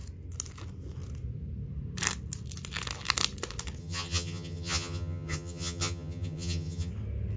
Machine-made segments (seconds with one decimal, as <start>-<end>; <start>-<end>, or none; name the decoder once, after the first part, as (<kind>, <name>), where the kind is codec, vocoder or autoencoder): 3.8-6.9 (vocoder, HiFi-GAN)